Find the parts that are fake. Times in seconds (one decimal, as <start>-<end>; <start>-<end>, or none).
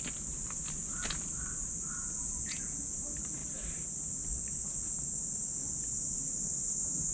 2.0-2.9